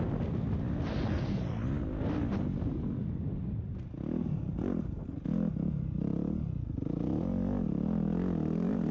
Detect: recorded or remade recorded